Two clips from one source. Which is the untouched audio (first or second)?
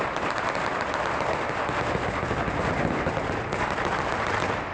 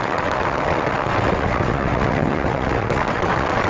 first